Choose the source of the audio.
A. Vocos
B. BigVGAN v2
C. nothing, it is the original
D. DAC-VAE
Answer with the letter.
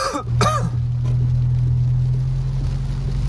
C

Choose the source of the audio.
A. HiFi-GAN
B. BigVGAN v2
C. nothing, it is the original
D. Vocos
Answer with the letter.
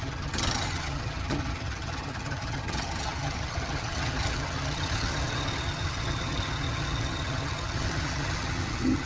A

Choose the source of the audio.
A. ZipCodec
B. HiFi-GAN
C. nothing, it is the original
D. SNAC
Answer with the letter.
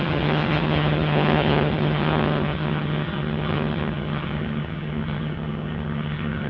B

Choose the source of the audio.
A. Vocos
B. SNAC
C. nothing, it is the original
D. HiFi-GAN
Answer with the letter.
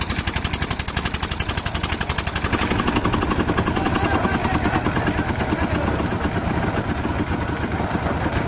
C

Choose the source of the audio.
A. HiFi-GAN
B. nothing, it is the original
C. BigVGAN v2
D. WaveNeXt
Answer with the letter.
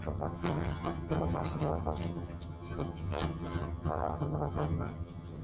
A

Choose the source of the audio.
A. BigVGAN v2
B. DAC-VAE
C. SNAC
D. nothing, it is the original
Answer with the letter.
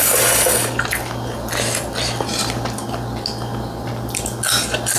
D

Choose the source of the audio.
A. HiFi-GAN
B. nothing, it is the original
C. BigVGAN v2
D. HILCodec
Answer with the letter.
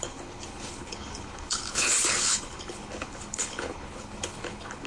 D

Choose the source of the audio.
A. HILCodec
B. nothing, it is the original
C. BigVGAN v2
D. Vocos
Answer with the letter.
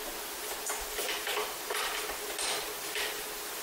B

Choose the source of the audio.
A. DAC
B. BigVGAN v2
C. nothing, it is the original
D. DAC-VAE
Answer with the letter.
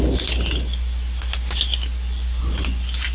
C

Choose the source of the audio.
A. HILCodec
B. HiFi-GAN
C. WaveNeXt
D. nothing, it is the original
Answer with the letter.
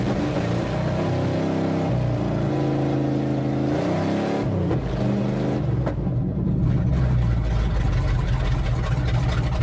D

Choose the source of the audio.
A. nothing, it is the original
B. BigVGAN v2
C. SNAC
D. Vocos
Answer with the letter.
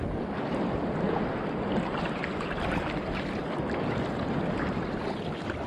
A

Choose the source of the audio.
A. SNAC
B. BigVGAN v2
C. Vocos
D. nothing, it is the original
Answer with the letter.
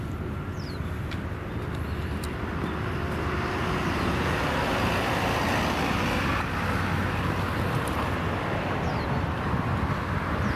D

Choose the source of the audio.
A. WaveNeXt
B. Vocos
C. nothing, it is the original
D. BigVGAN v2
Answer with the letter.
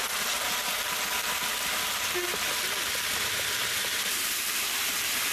C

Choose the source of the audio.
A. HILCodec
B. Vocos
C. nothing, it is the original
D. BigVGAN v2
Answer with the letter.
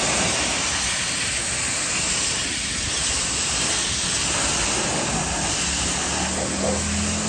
C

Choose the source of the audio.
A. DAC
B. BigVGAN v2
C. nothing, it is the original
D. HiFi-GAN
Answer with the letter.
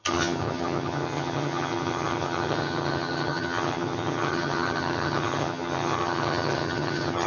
D